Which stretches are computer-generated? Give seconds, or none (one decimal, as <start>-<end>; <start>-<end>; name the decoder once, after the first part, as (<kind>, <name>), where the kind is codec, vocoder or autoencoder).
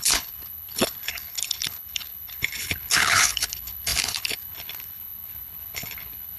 0.0-6.4 (codec, HILCodec)